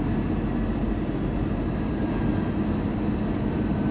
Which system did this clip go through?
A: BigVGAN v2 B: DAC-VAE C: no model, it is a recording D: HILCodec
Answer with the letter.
C